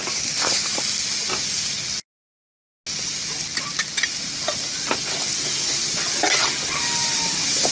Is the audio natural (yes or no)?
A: yes